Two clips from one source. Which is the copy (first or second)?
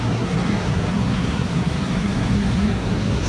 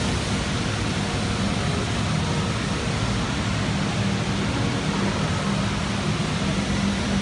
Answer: first